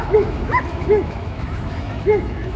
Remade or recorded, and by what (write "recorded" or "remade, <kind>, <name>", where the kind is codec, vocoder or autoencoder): remade, autoencoder, DAC-VAE